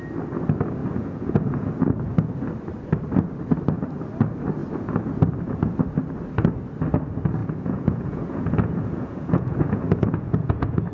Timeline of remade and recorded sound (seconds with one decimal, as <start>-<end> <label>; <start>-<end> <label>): 0.0-0.8 recorded; 0.8-1.7 remade; 1.7-7.4 recorded; 7.4-10.9 remade